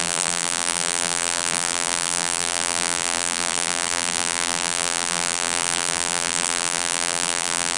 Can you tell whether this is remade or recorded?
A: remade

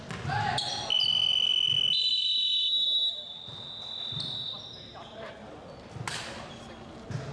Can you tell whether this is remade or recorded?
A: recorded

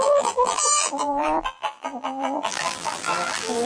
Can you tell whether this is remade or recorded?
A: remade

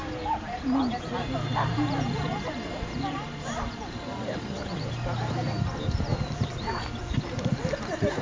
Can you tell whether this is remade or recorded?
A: remade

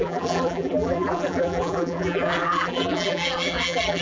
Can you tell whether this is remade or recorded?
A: remade